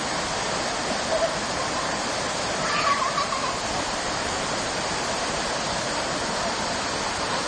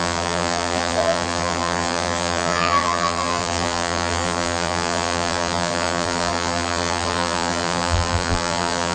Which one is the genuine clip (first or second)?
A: first